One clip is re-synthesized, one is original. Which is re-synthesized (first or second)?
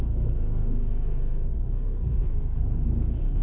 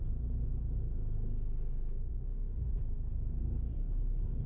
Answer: first